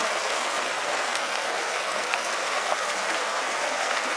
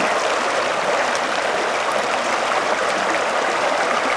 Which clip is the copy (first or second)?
first